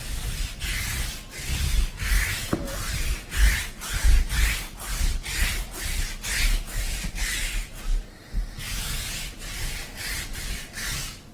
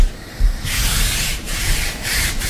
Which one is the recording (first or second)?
first